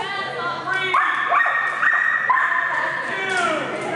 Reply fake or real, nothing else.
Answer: real